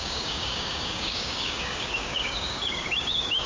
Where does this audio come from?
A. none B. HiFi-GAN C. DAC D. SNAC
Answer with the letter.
C